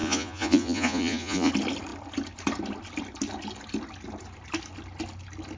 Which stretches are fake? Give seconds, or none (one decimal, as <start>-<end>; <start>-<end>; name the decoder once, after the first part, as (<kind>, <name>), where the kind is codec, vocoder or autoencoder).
0.0-1.5 (vocoder, Vocos)